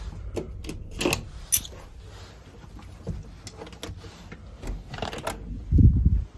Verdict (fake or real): real